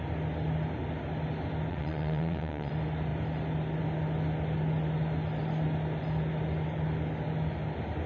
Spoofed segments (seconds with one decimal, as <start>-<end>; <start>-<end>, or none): 1.7-2.7